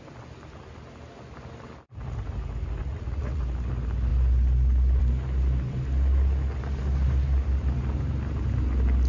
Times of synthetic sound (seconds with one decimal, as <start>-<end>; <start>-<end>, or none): 2.8-3.4